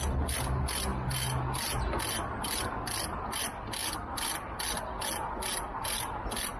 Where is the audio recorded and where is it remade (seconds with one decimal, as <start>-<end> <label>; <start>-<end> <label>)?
0.0-6.6 recorded

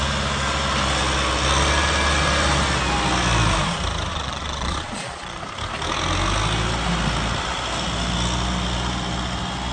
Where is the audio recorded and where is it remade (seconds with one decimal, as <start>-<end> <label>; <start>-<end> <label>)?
0.0-4.1 recorded; 4.1-5.4 remade; 5.4-9.7 recorded

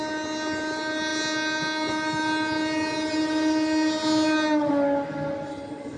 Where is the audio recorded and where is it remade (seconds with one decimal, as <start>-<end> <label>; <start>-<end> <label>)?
0.0-6.0 recorded

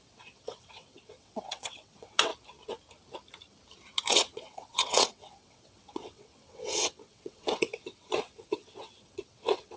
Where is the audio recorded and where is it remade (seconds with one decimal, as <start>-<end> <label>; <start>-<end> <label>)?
0.0-2.3 remade; 2.3-4.1 recorded; 4.1-9.8 remade

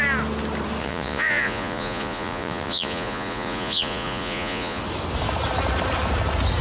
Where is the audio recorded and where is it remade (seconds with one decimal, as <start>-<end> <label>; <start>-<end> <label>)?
0.0-0.8 recorded; 0.8-4.8 remade; 4.8-6.6 recorded

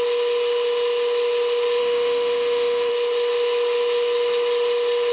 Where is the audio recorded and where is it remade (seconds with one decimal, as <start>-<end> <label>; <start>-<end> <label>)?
0.0-1.8 recorded; 1.8-2.9 remade; 2.9-5.1 recorded

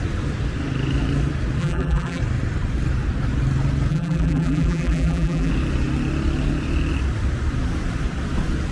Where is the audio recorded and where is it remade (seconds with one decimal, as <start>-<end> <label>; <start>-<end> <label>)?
0.0-1.6 recorded; 1.6-2.2 remade; 2.2-3.9 recorded; 3.9-5.5 remade; 5.5-8.7 recorded